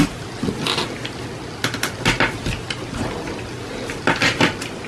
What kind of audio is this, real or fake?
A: real